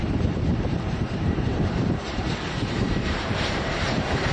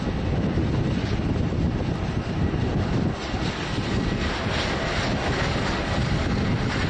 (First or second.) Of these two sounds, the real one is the second